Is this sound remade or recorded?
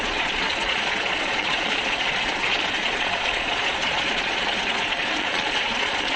remade